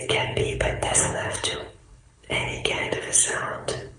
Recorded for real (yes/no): no